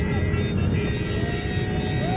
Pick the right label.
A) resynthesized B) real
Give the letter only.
B